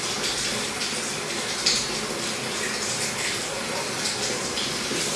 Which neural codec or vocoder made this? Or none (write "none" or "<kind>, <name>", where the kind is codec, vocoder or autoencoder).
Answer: none